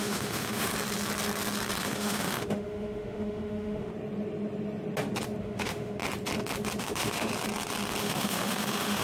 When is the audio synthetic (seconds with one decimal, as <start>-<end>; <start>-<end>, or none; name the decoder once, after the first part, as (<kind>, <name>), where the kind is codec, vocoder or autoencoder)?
0.0-0.7 (autoencoder, DAC-VAE); 1.8-3.9; 5.4-6.0; 6.8-7.3; 8.0-9.0